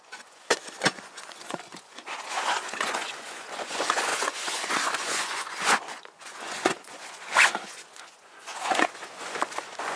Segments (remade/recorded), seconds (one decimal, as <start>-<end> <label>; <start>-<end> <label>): 0.0-10.0 remade